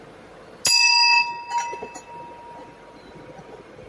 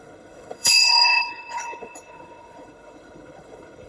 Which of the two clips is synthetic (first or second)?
second